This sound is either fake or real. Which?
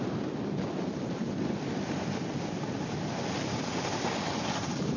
real